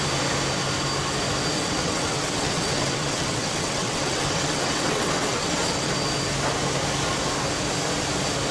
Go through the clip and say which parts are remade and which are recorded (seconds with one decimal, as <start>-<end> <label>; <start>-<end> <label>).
0.0-1.6 recorded; 1.6-5.9 remade; 5.9-8.5 recorded